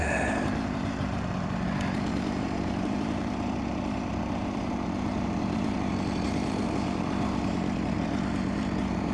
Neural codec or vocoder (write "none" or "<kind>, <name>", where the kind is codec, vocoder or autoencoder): vocoder, BigVGAN v2